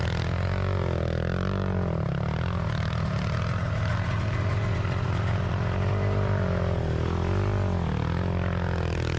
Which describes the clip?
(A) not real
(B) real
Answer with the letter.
B